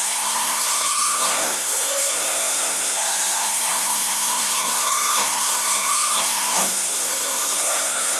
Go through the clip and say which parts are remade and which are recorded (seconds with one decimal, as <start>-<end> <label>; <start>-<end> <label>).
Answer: 0.0-8.2 remade